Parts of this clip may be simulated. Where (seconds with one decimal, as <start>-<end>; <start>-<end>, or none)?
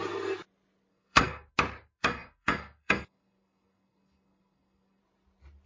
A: 0.9-1.5; 2.0-5.0